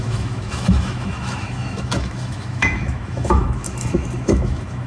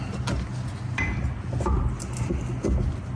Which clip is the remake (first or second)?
first